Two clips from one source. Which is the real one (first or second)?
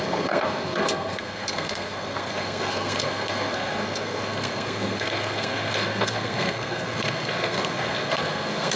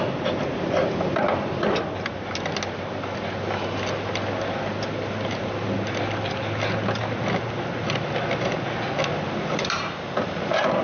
second